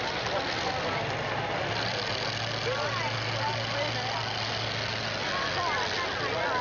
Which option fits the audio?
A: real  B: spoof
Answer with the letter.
A